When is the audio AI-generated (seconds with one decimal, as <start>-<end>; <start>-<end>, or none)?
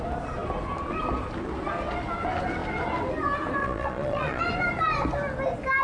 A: 3.6-4.4